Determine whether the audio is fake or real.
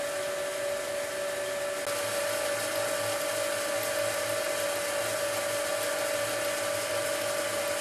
real